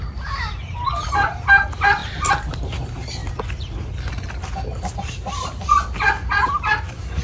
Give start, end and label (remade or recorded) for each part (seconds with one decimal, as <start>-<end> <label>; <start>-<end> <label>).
0.0-7.2 recorded